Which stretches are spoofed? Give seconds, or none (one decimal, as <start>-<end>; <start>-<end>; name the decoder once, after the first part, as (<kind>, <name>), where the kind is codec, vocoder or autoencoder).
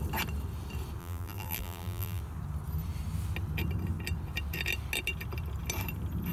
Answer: 1.0-2.2 (vocoder, BigVGAN v2)